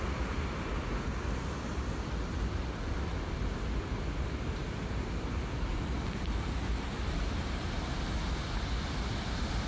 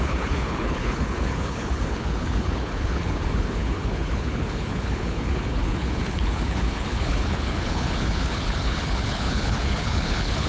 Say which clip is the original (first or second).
first